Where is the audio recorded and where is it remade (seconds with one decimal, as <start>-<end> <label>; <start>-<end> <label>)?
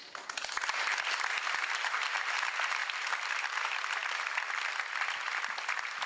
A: 0.0-6.1 recorded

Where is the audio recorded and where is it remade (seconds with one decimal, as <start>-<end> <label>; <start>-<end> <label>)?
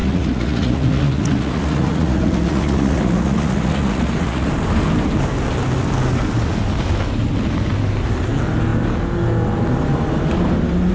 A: 0.0-4.5 remade; 4.5-10.9 recorded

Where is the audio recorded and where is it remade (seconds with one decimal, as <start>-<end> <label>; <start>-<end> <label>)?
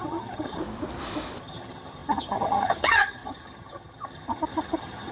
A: 0.0-0.6 remade; 0.6-1.4 recorded; 1.4-5.1 remade